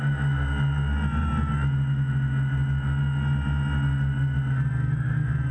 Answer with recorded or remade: recorded